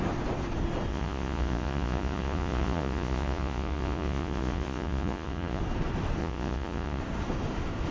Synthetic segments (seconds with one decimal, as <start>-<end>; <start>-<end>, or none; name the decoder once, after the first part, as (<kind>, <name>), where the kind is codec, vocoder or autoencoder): 0.9-5.6 (vocoder, Vocos); 6.2-7.0